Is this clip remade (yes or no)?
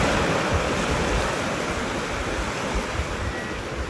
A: no